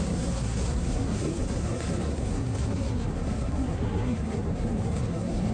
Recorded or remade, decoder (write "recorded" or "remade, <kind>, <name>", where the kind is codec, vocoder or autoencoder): remade, codec, SNAC